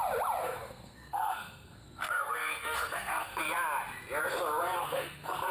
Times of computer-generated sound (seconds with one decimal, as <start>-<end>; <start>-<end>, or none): 0.4-3.4; 4.8-5.5